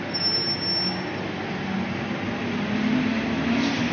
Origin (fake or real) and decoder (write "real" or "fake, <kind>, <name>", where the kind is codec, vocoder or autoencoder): real